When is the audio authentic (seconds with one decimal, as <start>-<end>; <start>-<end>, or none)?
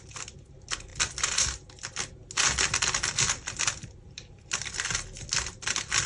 0.0-6.1